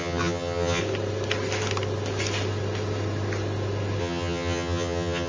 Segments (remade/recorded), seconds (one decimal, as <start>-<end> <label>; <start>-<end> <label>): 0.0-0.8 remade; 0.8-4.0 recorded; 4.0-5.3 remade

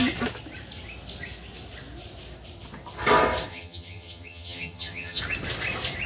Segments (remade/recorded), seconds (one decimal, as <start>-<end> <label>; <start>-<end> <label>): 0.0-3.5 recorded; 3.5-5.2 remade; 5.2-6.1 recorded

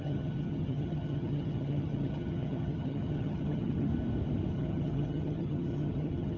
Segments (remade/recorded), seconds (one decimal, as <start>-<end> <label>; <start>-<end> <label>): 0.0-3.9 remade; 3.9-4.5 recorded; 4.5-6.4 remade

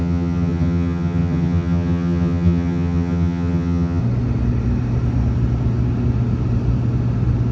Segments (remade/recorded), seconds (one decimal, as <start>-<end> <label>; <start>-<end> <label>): 0.0-4.0 remade; 4.0-7.5 recorded

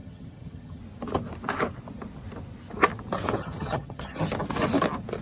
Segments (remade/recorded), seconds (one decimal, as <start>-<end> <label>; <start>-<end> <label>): 0.0-0.8 remade; 0.8-3.4 recorded; 3.4-4.2 remade; 4.2-5.2 recorded

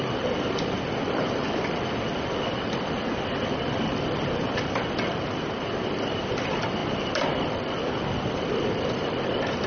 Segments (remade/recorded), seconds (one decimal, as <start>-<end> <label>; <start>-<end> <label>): 0.0-9.7 recorded

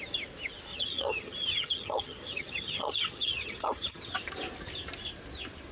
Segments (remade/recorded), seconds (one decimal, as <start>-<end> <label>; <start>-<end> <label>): 0.0-0.7 recorded; 0.7-4.1 remade; 4.1-5.7 recorded